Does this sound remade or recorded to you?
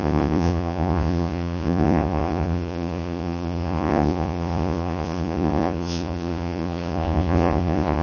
remade